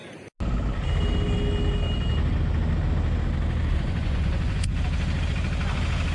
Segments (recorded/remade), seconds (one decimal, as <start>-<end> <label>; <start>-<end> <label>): 0.0-3.7 recorded; 3.7-4.8 remade; 4.8-6.1 recorded